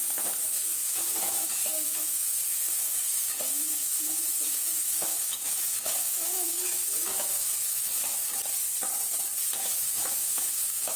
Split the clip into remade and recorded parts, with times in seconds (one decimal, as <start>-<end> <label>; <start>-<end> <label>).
0.0-8.3 remade; 8.3-9.4 recorded; 9.4-11.0 remade